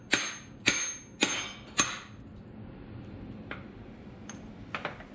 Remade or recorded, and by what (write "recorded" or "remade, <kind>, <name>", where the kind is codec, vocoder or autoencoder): recorded